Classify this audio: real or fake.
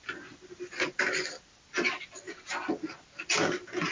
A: real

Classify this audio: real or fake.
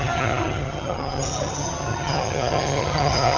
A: fake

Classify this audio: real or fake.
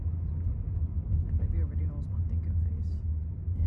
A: real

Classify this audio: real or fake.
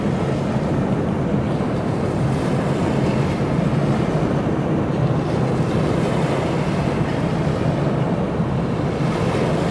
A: real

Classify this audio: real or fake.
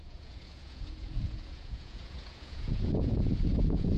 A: fake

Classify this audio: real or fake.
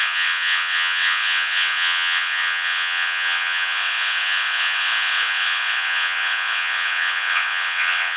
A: fake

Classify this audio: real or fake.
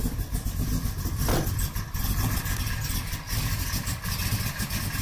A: real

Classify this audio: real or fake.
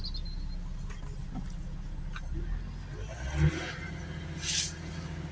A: real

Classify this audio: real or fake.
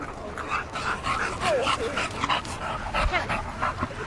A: real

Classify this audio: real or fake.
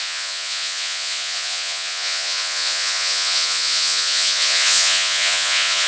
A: fake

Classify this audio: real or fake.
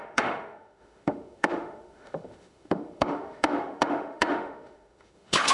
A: fake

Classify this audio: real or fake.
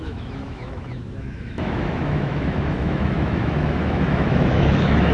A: fake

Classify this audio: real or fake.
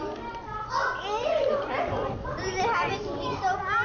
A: real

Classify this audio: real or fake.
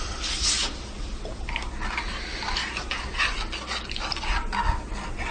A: real